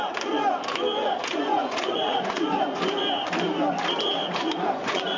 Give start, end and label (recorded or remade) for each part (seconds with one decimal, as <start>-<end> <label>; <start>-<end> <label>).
0.0-1.0 recorded; 1.0-2.8 remade; 2.8-4.2 recorded; 4.2-5.2 remade